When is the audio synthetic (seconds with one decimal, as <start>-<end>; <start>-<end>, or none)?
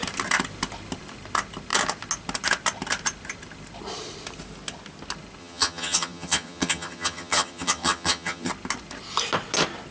5.4-8.5